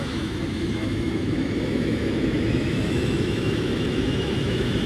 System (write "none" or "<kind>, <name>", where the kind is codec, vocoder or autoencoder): autoencoder, DAC-VAE